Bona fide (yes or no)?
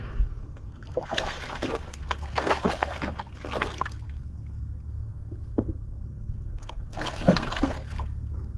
no